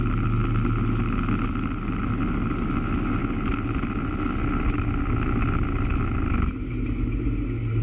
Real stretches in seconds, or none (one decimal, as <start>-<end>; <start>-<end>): 0.0-7.8

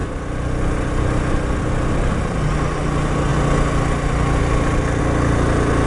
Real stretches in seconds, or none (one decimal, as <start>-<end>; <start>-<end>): 0.0-5.9

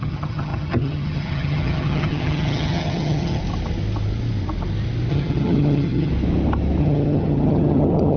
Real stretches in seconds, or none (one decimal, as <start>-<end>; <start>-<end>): 3.4-5.1; 6.1-6.8

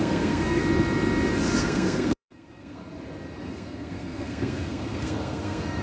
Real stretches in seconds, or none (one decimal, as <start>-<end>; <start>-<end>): 0.6-1.6; 2.8-3.4